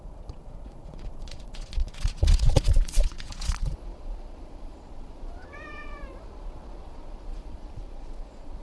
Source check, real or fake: fake